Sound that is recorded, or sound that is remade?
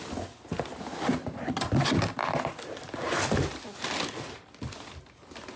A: recorded